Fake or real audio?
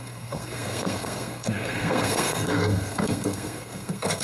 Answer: fake